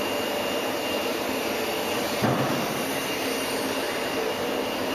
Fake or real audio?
real